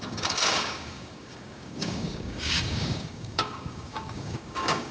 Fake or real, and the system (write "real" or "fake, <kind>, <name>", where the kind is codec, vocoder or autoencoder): fake, codec, DAC